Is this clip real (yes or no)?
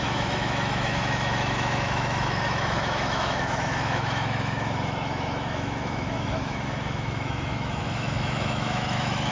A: no